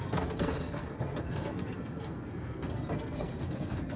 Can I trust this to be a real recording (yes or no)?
no